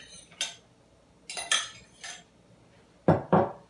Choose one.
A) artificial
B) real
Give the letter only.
B